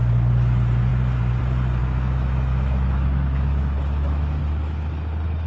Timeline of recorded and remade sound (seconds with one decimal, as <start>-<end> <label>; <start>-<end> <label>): 0.0-1.8 recorded; 1.8-4.4 remade; 4.4-5.5 recorded